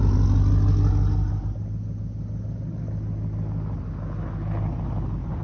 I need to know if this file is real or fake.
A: real